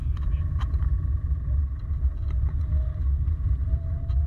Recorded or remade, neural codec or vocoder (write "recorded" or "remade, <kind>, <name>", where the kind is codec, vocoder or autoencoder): remade, vocoder, BigVGAN v2